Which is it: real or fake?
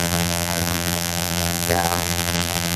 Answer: fake